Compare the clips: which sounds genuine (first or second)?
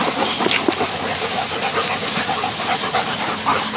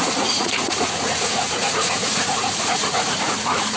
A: first